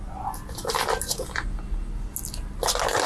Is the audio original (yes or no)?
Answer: yes